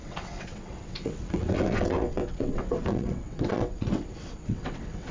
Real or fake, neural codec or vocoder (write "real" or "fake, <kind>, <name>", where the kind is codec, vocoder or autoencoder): fake, vocoder, WaveNeXt